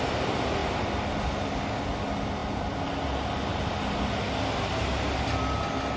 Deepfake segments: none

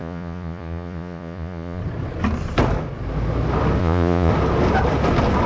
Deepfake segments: 0.0-1.8 (vocoder, Vocos); 3.8-4.3